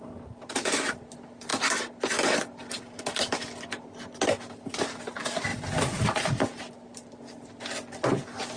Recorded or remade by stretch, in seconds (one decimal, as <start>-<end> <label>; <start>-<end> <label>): 0.0-8.6 recorded